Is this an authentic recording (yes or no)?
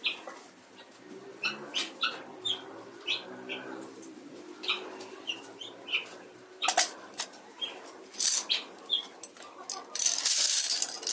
yes